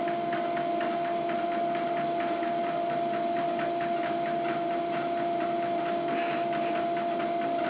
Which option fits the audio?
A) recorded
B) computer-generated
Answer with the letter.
A